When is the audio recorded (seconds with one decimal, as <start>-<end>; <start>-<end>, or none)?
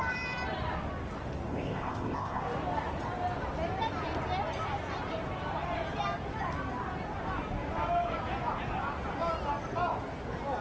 0.0-1.5; 2.4-10.6